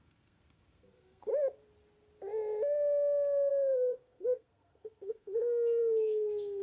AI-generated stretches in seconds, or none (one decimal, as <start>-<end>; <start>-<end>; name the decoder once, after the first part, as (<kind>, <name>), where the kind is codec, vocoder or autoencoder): 0.0-1.3 (codec, SNAC); 3.5-6.6

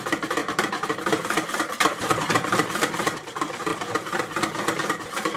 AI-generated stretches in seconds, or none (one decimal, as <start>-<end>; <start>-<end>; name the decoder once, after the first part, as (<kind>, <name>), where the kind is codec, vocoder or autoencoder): 0.0-3.7 (vocoder, BigVGAN v2); 4.9-5.4

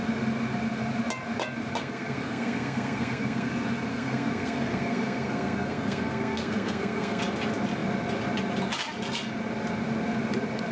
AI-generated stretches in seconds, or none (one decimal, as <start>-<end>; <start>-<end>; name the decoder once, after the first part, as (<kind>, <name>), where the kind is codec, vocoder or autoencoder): 1.7-3.5 (codec, SNAC); 3.9-7.2

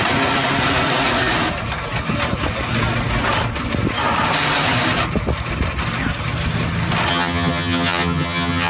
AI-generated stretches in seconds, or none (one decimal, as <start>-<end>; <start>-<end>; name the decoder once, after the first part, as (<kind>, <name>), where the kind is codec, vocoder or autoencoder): 7.1-8.7 (vocoder, HiFi-GAN)

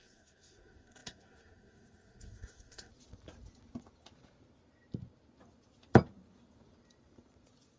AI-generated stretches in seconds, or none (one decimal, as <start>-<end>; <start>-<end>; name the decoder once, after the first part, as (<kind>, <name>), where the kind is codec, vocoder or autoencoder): 0.0-2.9 (codec, SNAC)

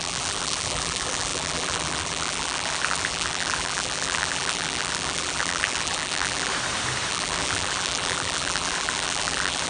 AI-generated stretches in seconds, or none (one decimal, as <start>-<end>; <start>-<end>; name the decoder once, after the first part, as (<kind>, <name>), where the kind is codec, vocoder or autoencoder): 0.0-6.5 (vocoder, BigVGAN v2); 7.1-9.7

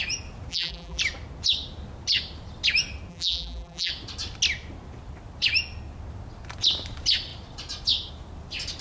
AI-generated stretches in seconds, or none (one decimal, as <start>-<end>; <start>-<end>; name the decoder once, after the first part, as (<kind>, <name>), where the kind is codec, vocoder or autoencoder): 0.5-1.0 (vocoder, BigVGAN v2); 3.1-3.9